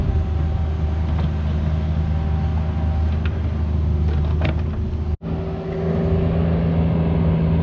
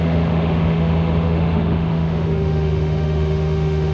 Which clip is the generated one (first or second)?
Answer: second